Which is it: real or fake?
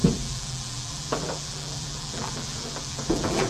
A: fake